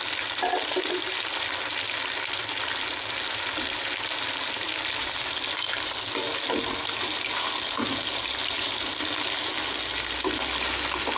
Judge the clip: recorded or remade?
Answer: recorded